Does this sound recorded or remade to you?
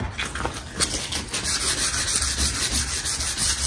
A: recorded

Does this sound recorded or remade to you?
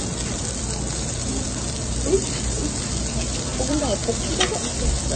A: recorded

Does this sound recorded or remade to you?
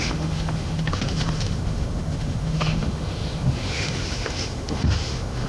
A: remade